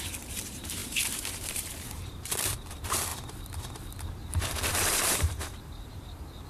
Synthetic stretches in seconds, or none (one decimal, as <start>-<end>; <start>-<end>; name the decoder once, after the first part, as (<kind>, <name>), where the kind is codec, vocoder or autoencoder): 0.0-3.1 (vocoder, BigVGAN v2); 4.7-6.5